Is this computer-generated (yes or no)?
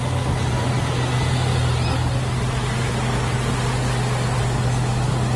no